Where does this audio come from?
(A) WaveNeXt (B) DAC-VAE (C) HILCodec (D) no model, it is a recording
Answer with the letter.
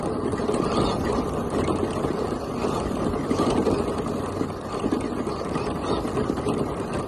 D